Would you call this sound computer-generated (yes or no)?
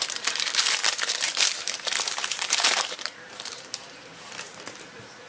yes